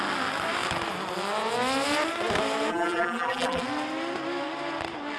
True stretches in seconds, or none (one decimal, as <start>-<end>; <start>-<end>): 0.0-2.7; 3.6-5.2